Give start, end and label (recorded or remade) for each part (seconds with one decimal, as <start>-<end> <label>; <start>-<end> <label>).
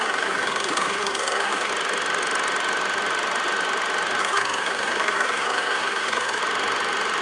0.0-1.7 remade; 1.7-4.2 recorded; 4.2-6.4 remade; 6.4-7.2 recorded